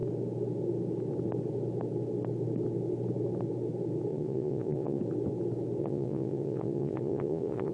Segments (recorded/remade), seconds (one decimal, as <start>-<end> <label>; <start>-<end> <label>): 0.0-4.1 recorded; 4.1-5.0 remade; 5.0-5.8 recorded; 5.8-7.7 remade